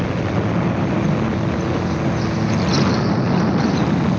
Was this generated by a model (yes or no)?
no